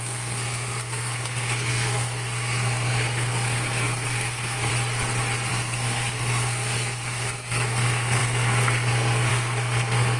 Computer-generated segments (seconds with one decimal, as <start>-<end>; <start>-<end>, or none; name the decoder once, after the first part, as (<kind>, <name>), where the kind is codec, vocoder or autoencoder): 0.0-4.7 (codec, SNAC); 5.5-10.2